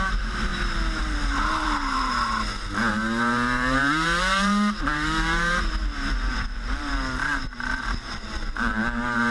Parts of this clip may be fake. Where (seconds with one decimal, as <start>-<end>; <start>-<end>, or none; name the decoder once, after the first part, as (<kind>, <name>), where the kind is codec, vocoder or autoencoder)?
0.0-0.5 (vocoder, BigVGAN v2); 1.0-2.1; 2.9-9.3